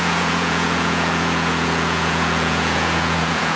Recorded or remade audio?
remade